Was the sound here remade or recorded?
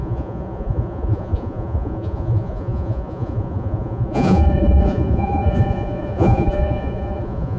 remade